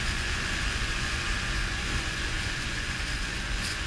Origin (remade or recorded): remade